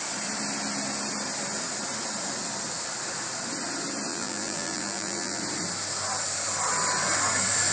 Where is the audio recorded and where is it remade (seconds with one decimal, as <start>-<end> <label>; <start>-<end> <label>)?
0.0-4.1 recorded; 4.1-5.4 remade; 5.4-7.7 recorded